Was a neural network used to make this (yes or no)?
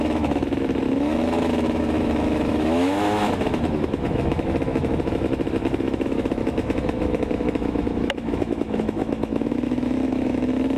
yes